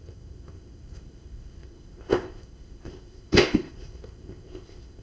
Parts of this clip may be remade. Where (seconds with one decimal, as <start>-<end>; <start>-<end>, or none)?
0.0-5.0